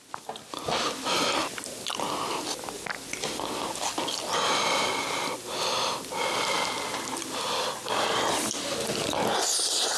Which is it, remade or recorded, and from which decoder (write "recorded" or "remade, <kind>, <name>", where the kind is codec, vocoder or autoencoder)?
recorded